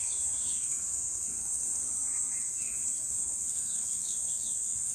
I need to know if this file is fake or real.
fake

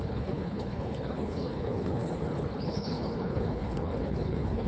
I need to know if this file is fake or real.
fake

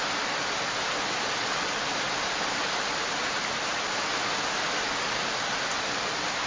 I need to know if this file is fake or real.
real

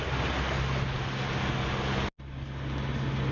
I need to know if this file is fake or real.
real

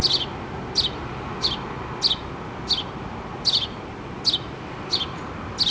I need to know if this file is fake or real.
real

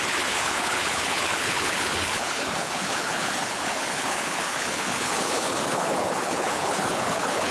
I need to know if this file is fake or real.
fake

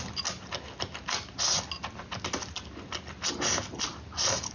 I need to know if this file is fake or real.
real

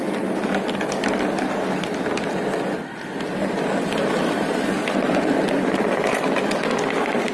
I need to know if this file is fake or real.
real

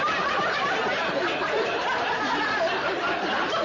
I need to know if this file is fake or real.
fake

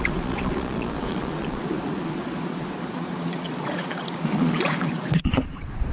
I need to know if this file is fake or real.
fake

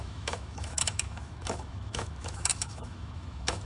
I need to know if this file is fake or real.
fake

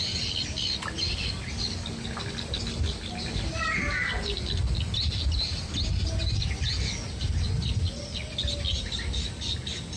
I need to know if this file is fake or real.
real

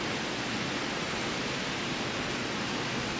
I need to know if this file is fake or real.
real